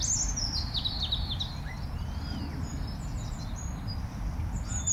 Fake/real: real